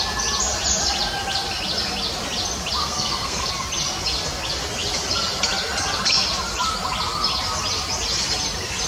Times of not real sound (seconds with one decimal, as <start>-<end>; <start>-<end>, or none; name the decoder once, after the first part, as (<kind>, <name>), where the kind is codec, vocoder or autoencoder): 2.8-3.5 (codec, SNAC)